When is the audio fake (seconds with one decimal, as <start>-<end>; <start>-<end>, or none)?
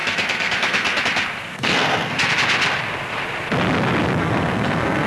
0.0-1.0; 1.5-2.3; 4.2-5.1